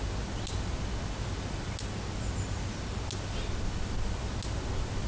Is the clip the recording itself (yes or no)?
yes